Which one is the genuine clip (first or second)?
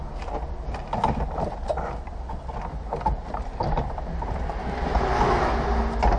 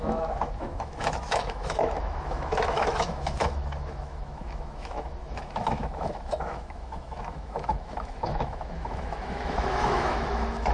first